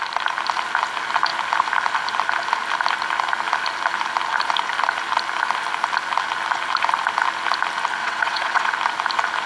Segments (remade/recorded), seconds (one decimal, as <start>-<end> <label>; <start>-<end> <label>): 0.0-8.0 recorded; 8.0-8.7 remade; 8.7-9.5 recorded

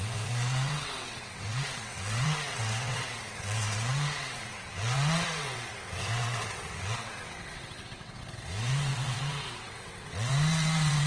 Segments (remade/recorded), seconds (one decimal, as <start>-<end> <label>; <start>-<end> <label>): 0.0-11.1 remade

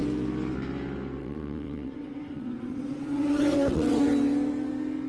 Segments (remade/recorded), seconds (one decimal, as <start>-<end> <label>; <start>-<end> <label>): 0.0-1.2 recorded; 1.2-4.1 remade; 4.1-5.1 recorded

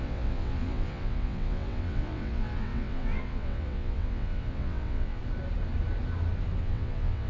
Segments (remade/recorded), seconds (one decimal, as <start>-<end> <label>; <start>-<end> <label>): 0.0-5.2 remade; 5.2-6.6 recorded; 6.6-7.3 remade

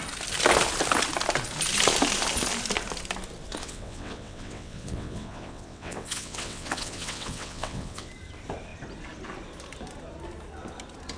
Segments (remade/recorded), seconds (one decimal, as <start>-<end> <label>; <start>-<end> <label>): 0.0-3.6 recorded; 3.6-8.1 remade; 8.1-11.2 recorded

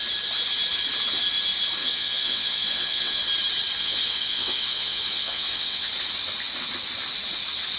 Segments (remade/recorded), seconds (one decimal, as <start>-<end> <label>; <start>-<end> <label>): 0.0-1.8 recorded; 1.8-3.2 remade; 3.2-3.8 recorded; 3.8-5.9 remade; 5.9-7.8 recorded

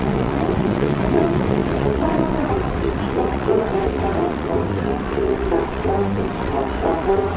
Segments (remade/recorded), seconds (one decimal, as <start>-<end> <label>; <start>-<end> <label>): 0.0-7.4 remade

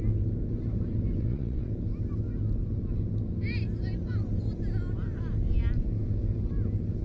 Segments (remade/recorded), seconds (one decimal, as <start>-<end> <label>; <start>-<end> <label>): 0.0-1.2 recorded; 1.2-1.7 remade; 1.7-7.0 recorded